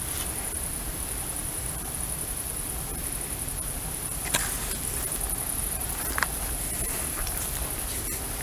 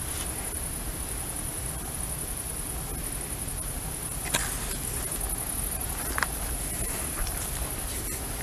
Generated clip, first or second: first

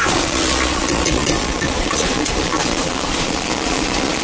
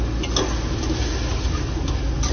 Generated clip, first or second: first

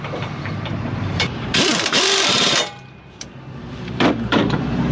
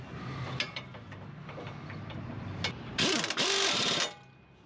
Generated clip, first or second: first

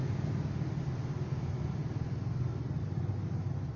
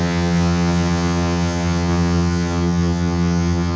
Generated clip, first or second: second